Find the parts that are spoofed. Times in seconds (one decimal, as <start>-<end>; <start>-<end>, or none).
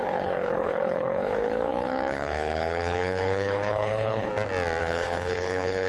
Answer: 0.0-4.3; 4.8-5.9